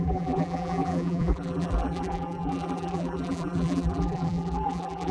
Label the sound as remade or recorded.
remade